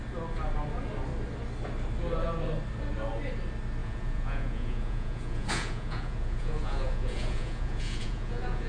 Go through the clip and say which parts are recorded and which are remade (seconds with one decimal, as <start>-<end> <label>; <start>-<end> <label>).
0.0-3.8 recorded; 3.8-8.7 remade